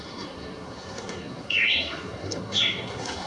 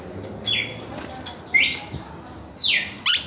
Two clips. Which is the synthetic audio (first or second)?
first